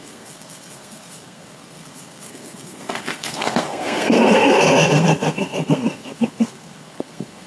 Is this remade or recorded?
remade